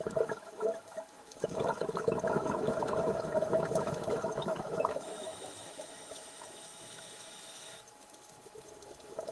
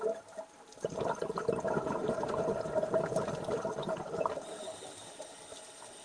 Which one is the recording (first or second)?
second